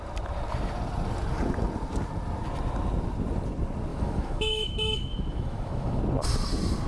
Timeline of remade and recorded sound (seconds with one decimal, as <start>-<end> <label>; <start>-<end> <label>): 0.0-3.9 recorded; 3.9-6.0 remade; 6.0-6.9 recorded